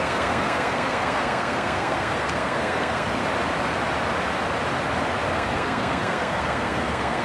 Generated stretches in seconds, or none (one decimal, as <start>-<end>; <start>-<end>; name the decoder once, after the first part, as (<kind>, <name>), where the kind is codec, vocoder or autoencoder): 0.0-3.2 (codec, SNAC); 5.3-7.2